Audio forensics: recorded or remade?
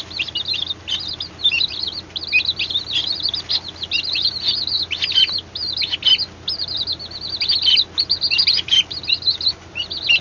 recorded